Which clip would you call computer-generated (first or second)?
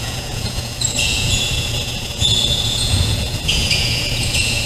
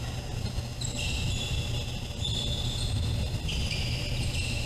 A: first